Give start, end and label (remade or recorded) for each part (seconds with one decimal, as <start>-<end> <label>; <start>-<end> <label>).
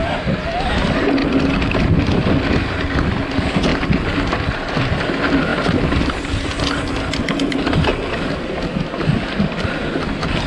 0.0-3.7 recorded; 3.7-5.1 remade; 5.1-5.5 recorded; 5.5-6.5 remade; 6.5-10.5 recorded